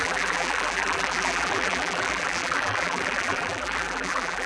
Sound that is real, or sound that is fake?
fake